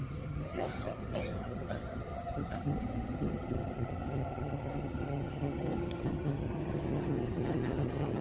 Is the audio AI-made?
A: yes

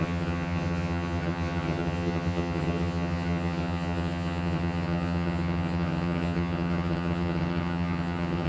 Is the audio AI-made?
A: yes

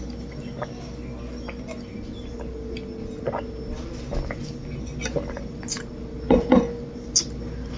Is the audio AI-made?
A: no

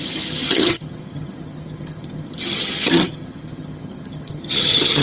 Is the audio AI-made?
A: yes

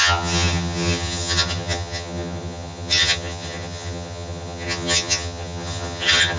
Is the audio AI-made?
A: yes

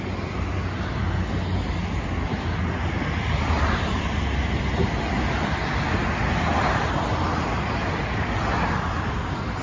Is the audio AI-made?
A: no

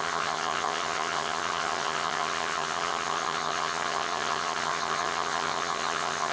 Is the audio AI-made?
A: yes